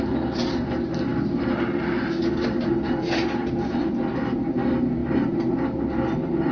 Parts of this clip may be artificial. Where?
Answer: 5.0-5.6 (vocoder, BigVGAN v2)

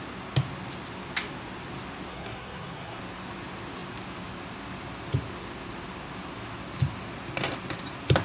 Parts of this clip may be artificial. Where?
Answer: 2.1-3.0 (codec, SNAC)

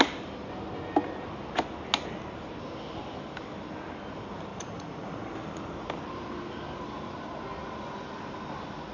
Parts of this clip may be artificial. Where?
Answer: 4.5-5.3 (vocoder, Vocos)

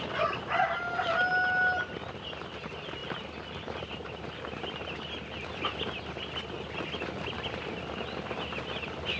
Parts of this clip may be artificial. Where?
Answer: none

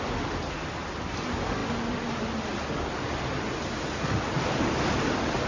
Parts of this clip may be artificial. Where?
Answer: none